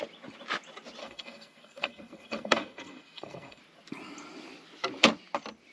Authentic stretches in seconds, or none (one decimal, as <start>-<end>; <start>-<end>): 0.0-1.0; 3.6-5.7

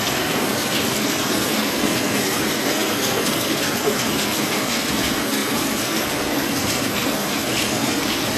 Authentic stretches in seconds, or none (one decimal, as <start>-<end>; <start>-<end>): none

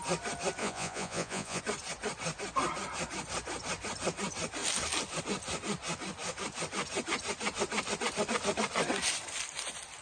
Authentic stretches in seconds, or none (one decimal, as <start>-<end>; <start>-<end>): 0.0-0.6; 1.6-10.0